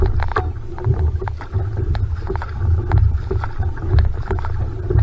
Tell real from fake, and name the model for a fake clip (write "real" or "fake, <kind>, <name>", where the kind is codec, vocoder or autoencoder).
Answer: real